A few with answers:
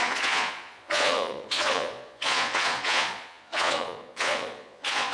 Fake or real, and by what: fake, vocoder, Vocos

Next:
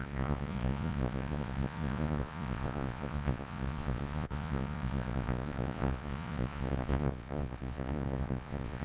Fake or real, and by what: fake, vocoder, Vocos